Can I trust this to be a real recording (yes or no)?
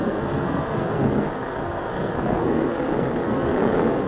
no